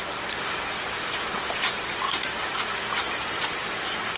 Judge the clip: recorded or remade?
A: remade